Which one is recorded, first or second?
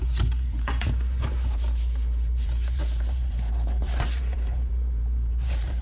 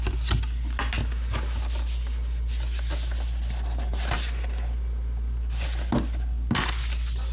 second